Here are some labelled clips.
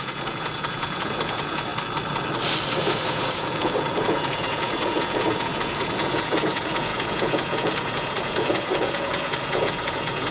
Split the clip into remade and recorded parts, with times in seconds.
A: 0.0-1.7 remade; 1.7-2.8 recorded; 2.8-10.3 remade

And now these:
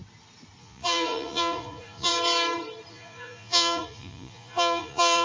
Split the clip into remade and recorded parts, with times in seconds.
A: 0.0-0.6 recorded; 0.6-2.1 remade; 2.1-2.9 recorded; 2.9-5.2 remade